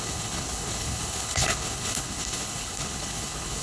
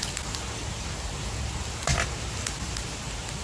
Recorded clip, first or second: second